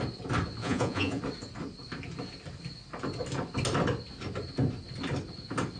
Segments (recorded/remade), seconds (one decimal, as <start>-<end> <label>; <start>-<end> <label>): 0.0-0.6 recorded; 0.6-1.2 remade; 1.2-5.8 recorded